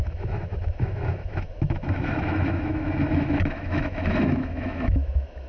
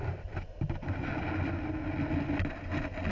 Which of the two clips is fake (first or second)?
first